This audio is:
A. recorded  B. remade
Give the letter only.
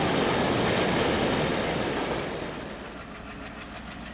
A